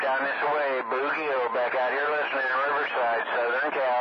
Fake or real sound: real